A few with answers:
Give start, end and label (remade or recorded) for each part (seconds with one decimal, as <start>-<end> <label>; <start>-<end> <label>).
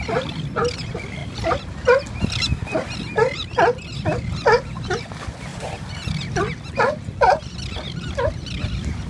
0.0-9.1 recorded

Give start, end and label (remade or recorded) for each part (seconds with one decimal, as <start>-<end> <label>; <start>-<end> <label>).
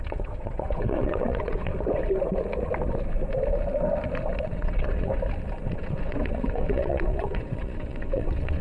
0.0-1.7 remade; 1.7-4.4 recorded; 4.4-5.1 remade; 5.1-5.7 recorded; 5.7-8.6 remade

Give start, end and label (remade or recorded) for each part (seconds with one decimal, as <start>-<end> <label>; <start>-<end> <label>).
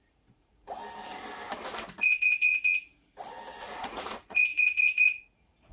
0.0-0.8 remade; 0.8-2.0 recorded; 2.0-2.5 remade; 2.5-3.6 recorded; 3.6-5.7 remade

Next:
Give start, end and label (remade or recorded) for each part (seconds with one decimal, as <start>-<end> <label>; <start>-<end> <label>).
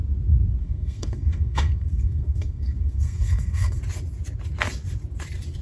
0.0-0.6 recorded; 0.6-3.8 remade; 3.8-5.6 recorded